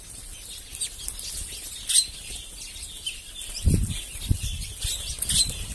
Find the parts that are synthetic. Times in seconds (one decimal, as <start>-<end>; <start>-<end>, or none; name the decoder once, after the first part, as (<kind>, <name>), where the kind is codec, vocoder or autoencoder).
none